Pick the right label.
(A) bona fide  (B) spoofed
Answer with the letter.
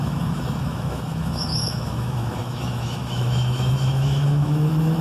B